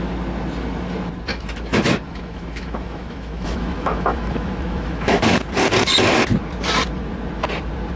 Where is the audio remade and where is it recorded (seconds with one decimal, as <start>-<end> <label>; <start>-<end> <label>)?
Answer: 0.0-1.3 recorded; 1.3-5.2 remade; 5.2-8.0 recorded